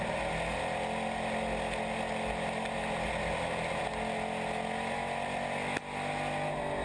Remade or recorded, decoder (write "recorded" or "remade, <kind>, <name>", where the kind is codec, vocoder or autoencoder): recorded